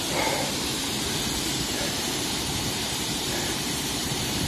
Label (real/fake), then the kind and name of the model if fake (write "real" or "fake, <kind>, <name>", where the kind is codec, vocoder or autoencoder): fake, vocoder, BigVGAN v2